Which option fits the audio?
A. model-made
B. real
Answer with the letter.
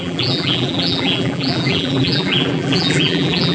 A